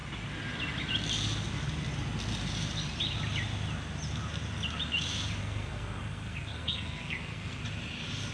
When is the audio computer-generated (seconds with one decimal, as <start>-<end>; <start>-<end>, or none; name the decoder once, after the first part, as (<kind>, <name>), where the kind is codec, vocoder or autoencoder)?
5.4-7.6 (codec, SNAC)